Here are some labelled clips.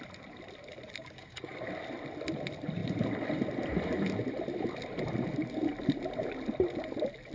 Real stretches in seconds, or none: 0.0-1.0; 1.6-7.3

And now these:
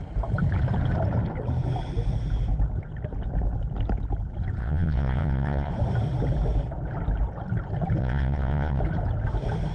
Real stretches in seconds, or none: 0.0-4.6; 5.7-8.0; 8.8-9.7

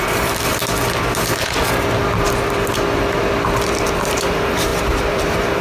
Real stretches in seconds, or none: 0.6-4.0

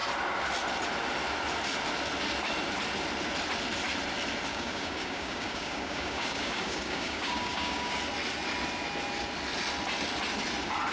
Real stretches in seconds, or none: 0.0-4.5; 8.0-10.9

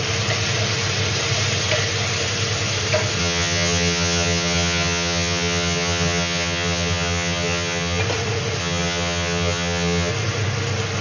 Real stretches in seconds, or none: 0.0-3.2; 8.0-8.6; 10.1-11.0

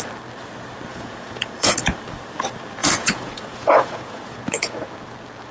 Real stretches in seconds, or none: 0.0-0.9; 1.7-2.8; 4.9-5.5

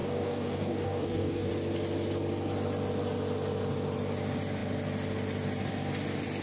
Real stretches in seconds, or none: 1.5-6.4

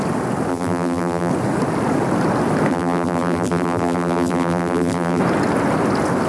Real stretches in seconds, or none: 0.0-0.5; 1.3-2.7; 5.2-6.3